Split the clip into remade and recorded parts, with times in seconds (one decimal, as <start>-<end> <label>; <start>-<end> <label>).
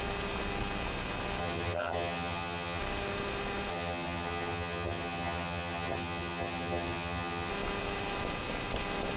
0.0-1.4 recorded; 1.4-2.8 remade; 2.8-3.7 recorded; 3.7-7.5 remade; 7.5-9.2 recorded